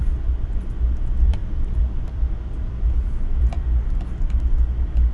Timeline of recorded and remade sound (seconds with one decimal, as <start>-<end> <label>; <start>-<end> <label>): 0.0-5.1 remade